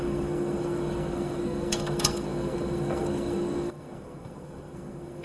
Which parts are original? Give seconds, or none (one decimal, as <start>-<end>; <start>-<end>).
none